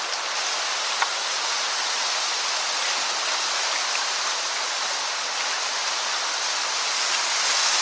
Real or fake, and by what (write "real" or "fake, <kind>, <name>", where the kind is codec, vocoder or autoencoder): real